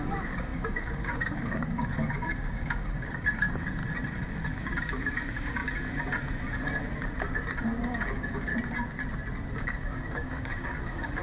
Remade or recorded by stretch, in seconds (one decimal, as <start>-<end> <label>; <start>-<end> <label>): 0.0-3.8 remade; 3.8-4.6 recorded; 4.6-5.6 remade; 5.6-7.8 recorded; 7.8-8.5 remade; 8.5-9.5 recorded; 9.5-11.2 remade